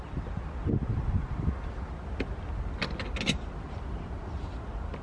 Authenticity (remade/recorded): recorded